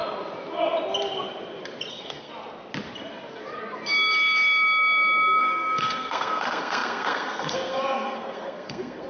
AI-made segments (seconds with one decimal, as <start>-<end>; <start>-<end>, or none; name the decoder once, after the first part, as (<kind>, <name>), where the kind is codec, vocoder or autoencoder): 1.9-2.3 (codec, SNAC); 5.4-9.1